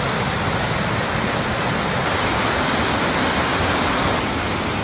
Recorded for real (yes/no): yes